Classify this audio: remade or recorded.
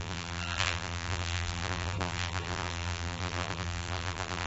remade